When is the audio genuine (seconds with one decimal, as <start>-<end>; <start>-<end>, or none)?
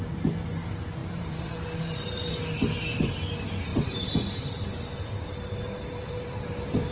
0.0-1.0; 2.3-3.7